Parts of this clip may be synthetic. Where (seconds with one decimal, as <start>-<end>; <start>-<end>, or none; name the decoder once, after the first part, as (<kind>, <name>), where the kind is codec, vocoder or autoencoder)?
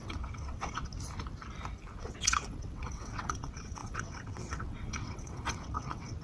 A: 0.0-0.9 (vocoder, WaveNeXt); 2.0-6.2